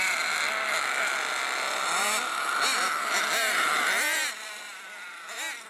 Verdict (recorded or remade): recorded